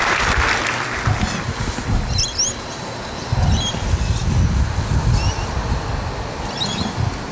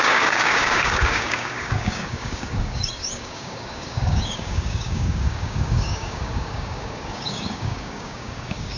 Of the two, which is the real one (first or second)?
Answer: first